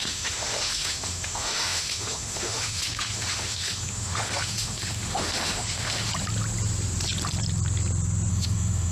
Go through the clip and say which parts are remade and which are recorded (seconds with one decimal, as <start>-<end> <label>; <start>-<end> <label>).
0.0-6.1 remade; 6.1-8.3 recorded; 8.3-8.9 remade